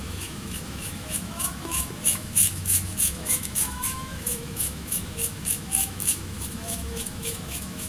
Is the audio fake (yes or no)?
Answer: yes